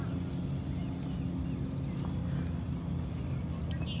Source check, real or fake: real